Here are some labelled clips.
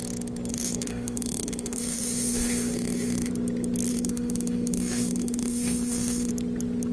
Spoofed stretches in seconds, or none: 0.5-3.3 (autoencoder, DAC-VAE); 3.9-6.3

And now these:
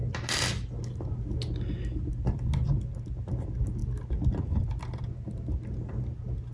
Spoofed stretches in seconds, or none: none

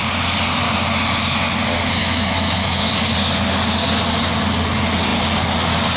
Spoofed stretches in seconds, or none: 2.0-2.9 (autoencoder, DAC-VAE)

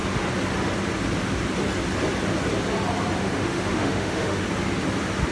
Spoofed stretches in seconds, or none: 3.2-4.4 (autoencoder, DAC-VAE)